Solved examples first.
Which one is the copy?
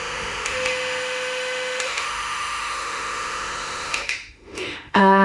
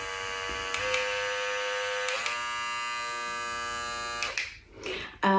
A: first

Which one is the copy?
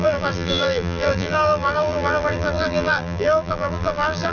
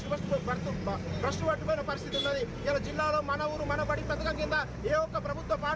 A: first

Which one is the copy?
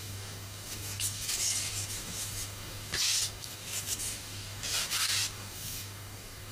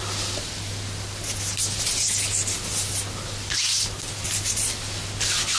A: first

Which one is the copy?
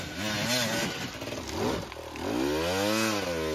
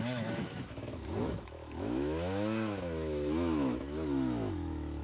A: second